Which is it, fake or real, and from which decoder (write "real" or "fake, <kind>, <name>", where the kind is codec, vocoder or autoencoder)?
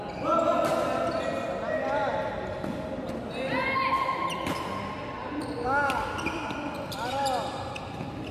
real